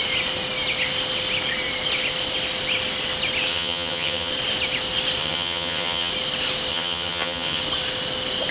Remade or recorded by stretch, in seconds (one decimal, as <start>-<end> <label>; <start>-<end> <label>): 0.0-3.5 recorded; 3.5-4.3 remade; 4.3-5.2 recorded; 5.2-6.1 remade; 6.1-6.7 recorded; 6.7-7.6 remade; 7.6-8.5 recorded

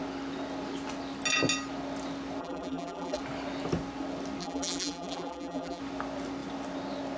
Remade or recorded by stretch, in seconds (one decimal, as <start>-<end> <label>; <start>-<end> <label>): 0.0-2.4 recorded; 2.4-3.2 remade; 3.2-4.4 recorded; 4.4-5.8 remade; 5.8-7.2 recorded